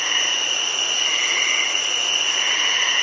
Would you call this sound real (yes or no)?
no